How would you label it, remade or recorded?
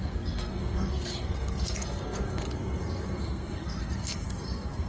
remade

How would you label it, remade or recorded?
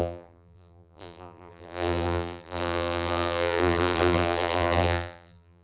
remade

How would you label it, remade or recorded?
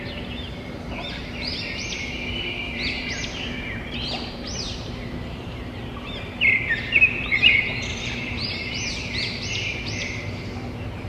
remade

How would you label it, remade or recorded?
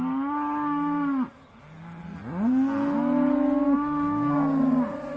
recorded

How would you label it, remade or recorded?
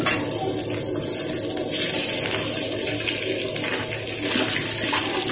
recorded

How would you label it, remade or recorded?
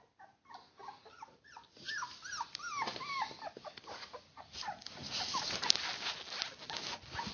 recorded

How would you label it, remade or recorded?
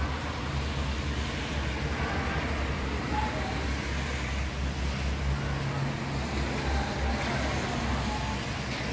recorded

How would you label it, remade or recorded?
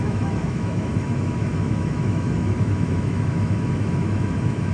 remade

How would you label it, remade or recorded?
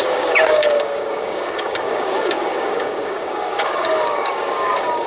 remade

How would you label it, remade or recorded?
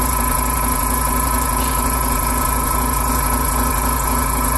remade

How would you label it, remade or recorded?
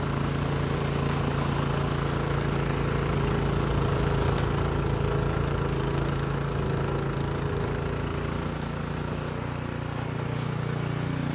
recorded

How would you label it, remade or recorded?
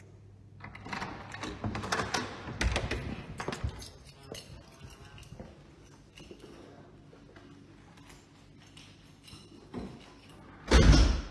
recorded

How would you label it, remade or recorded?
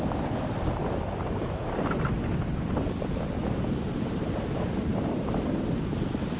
recorded